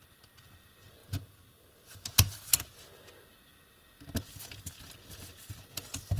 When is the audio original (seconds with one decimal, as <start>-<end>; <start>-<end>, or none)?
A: 0.0-6.2